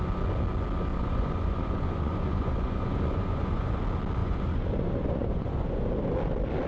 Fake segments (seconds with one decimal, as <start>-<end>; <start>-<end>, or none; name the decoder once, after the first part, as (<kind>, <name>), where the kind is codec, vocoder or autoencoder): 0.9-3.8 (vocoder, Vocos); 4.2-5.9